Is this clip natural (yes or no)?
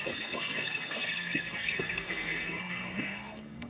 no